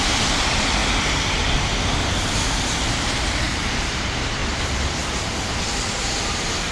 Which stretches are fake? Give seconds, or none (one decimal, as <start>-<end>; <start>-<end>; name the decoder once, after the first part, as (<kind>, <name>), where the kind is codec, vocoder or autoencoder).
0.0-4.4 (vocoder, BigVGAN v2); 5.2-6.7